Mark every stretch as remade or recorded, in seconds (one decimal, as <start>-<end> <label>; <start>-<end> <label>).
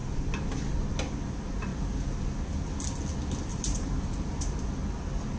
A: 0.0-1.7 recorded; 1.7-2.4 remade; 2.4-3.5 recorded; 3.5-4.3 remade; 4.3-5.4 recorded